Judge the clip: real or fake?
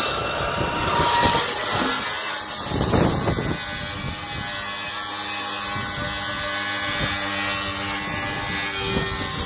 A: real